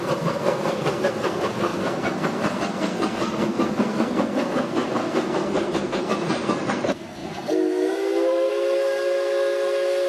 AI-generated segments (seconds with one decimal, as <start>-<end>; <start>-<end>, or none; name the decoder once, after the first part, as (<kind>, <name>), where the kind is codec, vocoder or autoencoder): 0.0-10.1 (codec, SNAC)